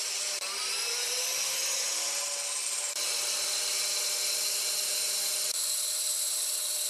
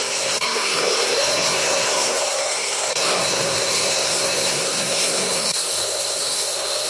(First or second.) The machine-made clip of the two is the second